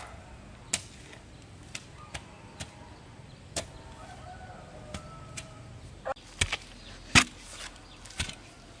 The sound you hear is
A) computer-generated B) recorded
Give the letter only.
B